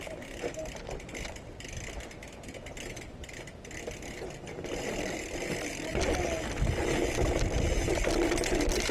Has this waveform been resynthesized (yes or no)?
no